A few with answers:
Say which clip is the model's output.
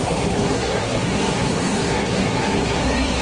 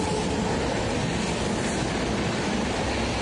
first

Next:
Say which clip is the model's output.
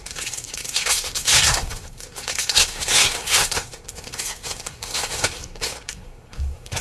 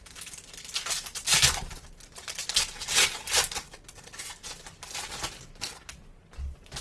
first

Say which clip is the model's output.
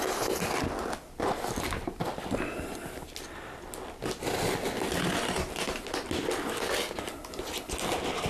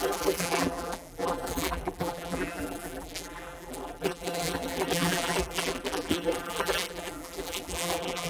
second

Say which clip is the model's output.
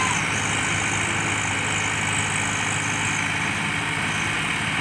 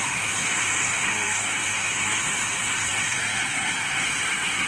second